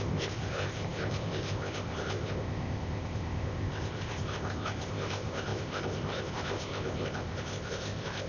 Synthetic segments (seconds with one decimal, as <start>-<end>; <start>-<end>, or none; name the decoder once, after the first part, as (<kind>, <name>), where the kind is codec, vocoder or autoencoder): 0.0-8.3 (codec, ZipCodec)